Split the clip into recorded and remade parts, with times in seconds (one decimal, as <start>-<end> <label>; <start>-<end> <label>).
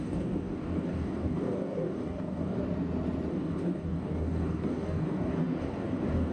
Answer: 0.0-2.6 remade; 2.6-3.3 recorded; 3.3-6.3 remade